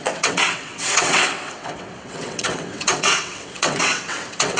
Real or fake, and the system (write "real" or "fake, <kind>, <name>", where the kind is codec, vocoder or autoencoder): fake, vocoder, WaveNeXt